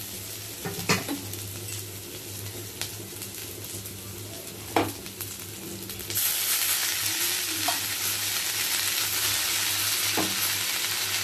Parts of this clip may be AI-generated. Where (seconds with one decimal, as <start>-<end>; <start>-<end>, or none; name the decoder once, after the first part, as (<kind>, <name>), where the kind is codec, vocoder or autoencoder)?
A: none